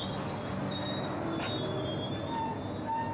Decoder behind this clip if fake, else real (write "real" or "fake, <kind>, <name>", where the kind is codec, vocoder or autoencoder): real